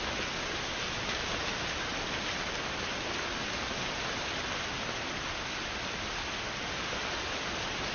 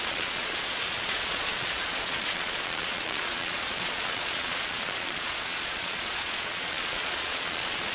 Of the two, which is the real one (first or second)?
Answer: first